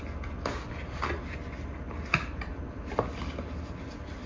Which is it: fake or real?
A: real